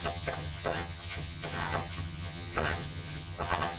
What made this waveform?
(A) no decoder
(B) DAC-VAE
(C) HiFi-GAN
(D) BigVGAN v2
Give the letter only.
C